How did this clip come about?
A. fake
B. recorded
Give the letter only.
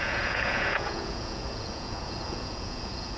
A